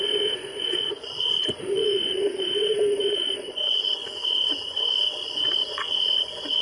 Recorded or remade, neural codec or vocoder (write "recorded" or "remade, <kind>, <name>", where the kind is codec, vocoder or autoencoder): remade, vocoder, Vocos